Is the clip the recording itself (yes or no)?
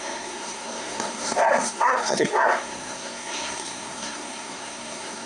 no